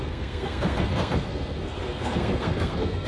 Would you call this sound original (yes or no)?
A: no